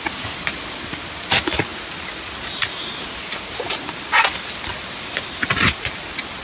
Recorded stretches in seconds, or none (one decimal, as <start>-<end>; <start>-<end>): 0.0-6.4